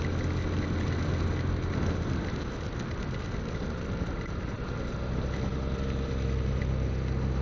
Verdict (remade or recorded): recorded